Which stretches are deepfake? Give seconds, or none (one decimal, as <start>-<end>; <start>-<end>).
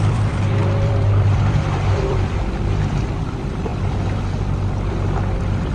0.0-3.7; 4.9-5.7